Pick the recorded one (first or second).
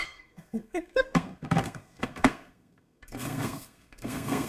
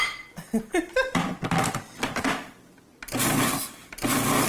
second